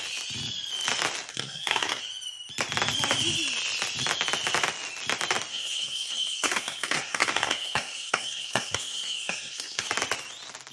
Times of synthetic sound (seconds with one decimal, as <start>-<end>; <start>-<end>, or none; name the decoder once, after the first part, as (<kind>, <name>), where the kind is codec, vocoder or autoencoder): 1.3-2.0 (codec, SNAC); 5.5-9.9